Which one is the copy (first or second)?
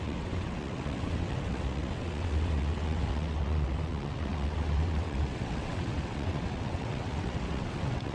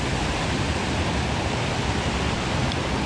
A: first